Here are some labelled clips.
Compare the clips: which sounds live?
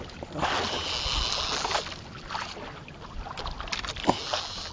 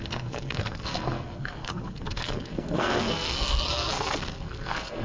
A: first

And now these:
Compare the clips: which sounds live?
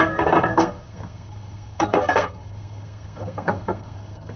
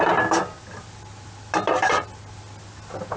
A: second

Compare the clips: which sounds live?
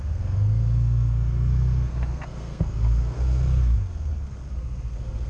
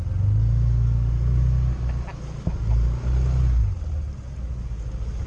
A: second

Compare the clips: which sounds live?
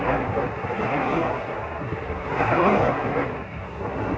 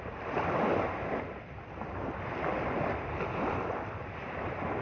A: second